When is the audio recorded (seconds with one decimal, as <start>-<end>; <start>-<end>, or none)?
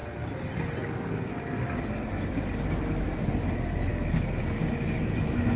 0.0-3.9; 4.7-5.6